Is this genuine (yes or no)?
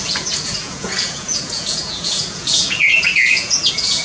no